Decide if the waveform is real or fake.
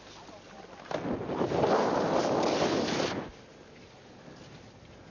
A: real